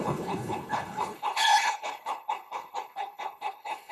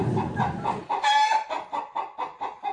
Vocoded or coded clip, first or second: first